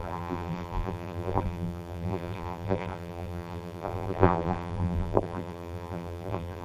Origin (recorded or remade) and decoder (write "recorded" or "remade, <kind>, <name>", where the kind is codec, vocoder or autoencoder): remade, vocoder, BigVGAN v2